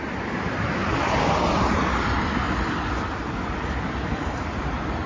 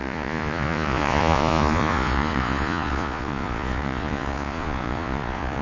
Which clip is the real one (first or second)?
first